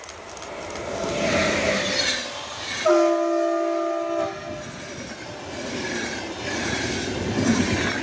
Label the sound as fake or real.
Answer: real